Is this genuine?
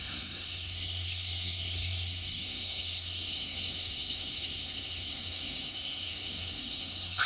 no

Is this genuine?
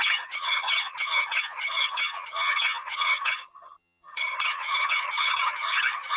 no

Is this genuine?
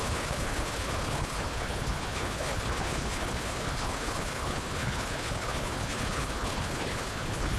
no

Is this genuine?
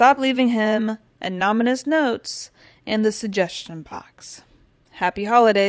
no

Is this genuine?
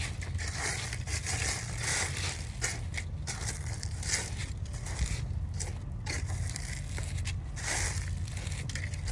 yes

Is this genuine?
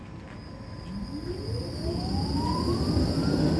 yes